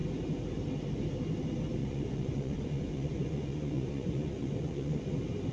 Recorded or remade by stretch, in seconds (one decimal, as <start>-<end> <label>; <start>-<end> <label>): 0.0-1.8 recorded; 1.8-5.1 remade; 5.1-5.5 recorded